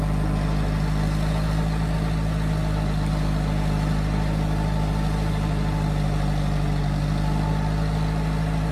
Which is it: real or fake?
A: real